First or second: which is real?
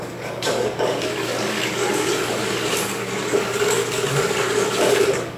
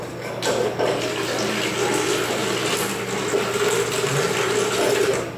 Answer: second